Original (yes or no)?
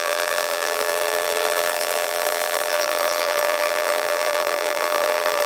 no